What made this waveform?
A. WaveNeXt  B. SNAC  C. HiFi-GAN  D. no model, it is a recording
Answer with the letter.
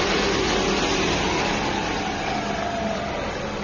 D